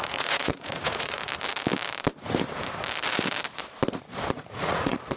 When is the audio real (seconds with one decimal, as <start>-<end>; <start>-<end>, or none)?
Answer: 1.2-4.3